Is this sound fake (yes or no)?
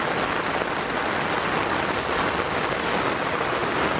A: no